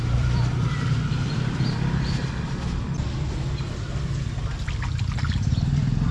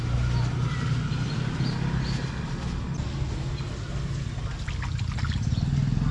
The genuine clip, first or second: second